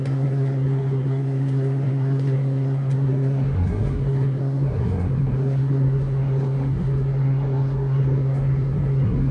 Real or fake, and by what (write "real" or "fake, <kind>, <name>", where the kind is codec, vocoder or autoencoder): fake, codec, SNAC